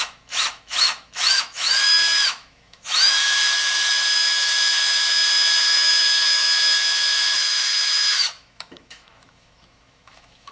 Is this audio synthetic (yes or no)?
yes